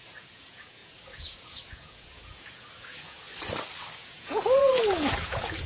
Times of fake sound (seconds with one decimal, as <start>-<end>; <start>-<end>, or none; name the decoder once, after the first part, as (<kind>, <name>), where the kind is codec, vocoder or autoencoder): 0.0-3.3 (vocoder, Vocos); 3.9-5.7